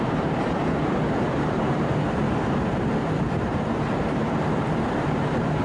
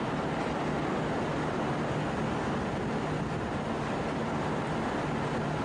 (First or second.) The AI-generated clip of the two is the first